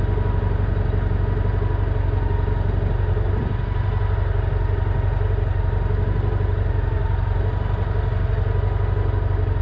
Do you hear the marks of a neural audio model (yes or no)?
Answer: no